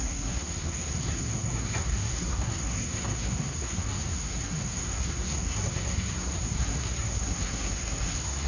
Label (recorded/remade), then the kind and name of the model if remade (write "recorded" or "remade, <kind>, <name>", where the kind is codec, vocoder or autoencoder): remade, codec, SNAC